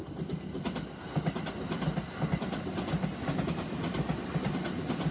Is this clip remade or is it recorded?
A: recorded